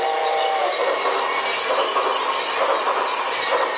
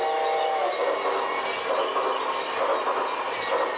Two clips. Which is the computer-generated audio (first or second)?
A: first